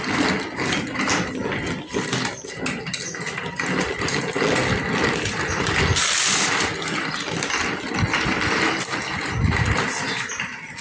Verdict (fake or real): real